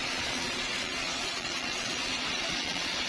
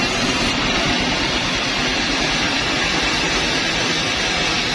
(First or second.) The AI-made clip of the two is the first